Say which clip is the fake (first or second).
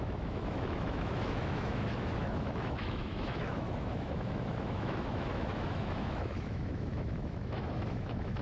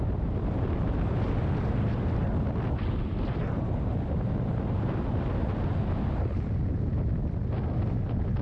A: first